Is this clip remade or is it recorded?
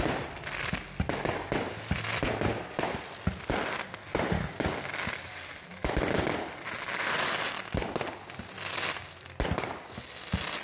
recorded